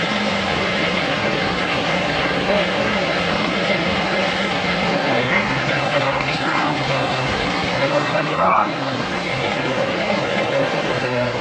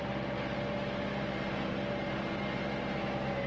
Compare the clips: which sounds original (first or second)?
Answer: second